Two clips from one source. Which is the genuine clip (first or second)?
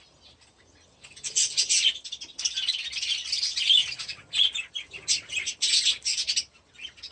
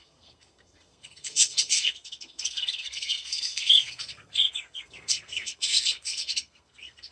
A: first